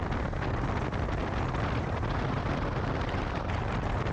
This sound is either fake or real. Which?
real